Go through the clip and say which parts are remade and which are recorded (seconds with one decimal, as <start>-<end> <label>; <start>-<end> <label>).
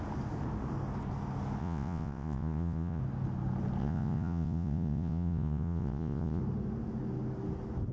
0.0-1.6 recorded; 1.6-3.0 remade; 3.0-3.8 recorded; 3.8-6.4 remade; 6.4-7.9 recorded